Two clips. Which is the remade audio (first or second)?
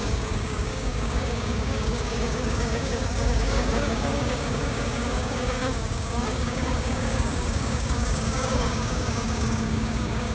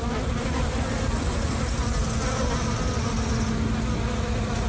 first